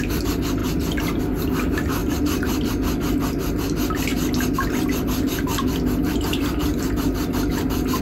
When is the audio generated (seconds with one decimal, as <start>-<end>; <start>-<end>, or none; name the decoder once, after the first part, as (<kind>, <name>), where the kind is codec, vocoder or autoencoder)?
2.0-2.7 (vocoder, BigVGAN v2); 4.1-8.0